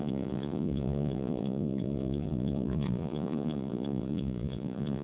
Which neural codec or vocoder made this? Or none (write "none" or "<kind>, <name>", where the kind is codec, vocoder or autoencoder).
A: vocoder, Vocos